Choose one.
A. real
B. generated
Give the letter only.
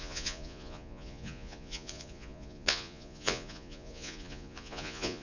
B